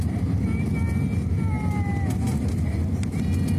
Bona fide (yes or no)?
yes